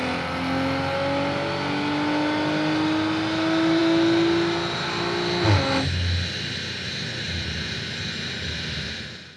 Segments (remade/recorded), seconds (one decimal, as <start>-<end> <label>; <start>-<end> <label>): 0.0-9.4 recorded